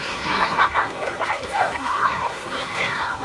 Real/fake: fake